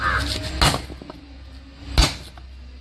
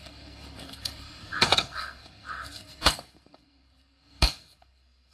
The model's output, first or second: second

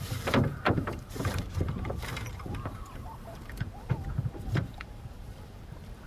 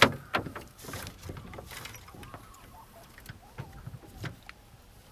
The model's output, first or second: first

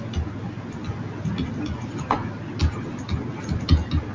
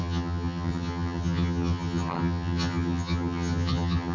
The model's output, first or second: second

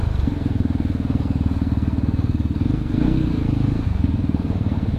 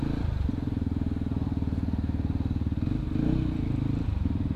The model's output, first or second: first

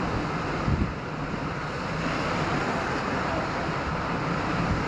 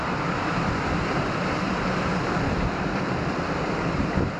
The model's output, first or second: second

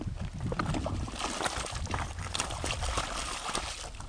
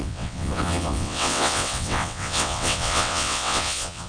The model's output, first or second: second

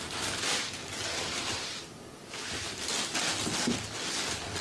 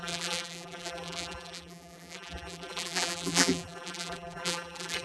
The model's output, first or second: second